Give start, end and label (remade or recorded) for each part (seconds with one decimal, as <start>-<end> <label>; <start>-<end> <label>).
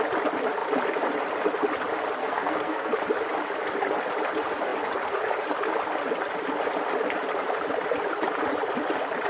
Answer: 0.0-2.2 recorded; 2.2-2.9 remade; 2.9-9.3 recorded